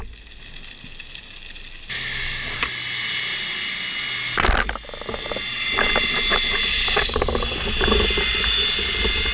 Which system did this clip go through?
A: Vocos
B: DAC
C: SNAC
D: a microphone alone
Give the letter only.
D